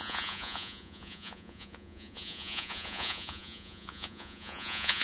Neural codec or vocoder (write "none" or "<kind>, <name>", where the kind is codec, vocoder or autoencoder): vocoder, Vocos